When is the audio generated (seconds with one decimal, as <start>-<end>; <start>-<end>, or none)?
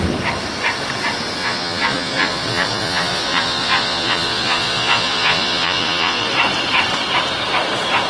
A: 1.4-6.3